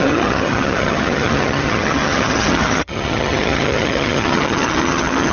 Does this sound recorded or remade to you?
remade